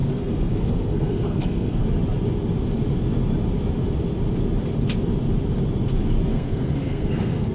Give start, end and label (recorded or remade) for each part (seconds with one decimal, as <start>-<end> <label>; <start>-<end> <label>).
0.0-1.8 remade; 1.8-6.3 recorded; 6.3-7.5 remade